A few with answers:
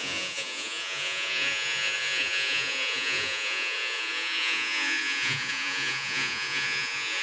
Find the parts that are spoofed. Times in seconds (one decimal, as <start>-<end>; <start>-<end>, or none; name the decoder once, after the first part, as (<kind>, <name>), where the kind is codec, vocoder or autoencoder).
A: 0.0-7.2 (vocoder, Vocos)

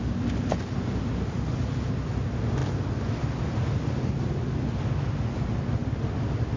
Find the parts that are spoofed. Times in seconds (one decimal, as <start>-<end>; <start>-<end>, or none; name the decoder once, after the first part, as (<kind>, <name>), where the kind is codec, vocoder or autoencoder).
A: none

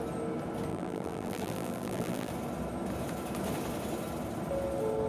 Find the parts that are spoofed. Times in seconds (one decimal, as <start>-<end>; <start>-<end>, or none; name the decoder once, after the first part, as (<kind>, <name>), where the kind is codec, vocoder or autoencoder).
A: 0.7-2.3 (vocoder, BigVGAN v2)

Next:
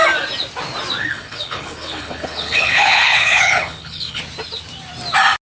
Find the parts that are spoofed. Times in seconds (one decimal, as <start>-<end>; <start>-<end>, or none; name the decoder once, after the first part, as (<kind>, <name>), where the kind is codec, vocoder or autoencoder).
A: 1.0-4.2 (codec, HILCodec)